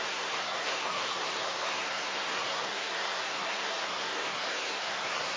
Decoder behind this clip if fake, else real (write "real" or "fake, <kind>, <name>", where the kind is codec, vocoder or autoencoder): fake, codec, SNAC